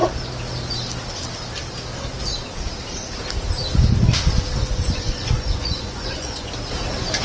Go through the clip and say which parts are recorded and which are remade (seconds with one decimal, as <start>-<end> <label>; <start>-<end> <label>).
0.0-4.6 recorded; 4.6-6.5 remade; 6.5-7.2 recorded